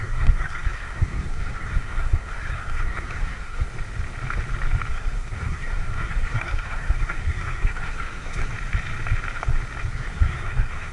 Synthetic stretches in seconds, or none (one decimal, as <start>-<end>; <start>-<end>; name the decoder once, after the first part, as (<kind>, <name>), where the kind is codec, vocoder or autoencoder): 0.0-3.7 (codec, SNAC); 4.9-8.5; 9.9-10.9